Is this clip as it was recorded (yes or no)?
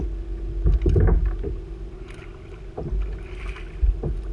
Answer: yes